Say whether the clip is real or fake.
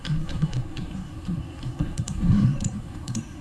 fake